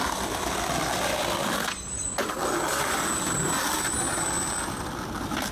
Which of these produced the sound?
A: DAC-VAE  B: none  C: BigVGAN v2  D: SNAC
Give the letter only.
B